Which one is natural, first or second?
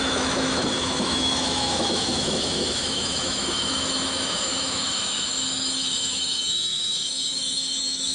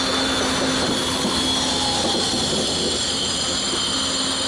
second